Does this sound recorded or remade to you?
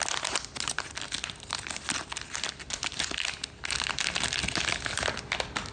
recorded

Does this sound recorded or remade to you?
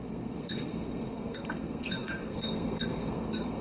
remade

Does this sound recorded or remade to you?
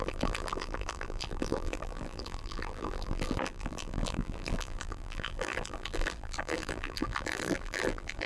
remade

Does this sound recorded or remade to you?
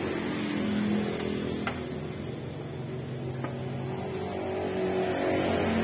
recorded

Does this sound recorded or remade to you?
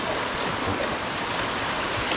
recorded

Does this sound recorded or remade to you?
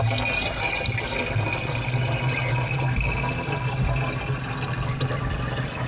recorded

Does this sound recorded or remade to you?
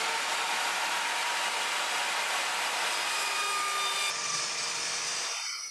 recorded